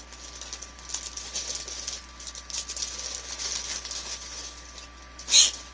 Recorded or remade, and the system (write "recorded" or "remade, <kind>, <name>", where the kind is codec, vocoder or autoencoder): recorded